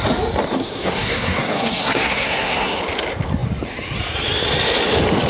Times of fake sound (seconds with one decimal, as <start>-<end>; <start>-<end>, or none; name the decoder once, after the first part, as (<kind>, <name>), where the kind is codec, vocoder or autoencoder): 0.6-2.8 (codec, SNAC)